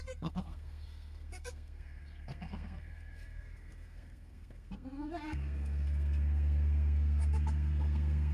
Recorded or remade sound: remade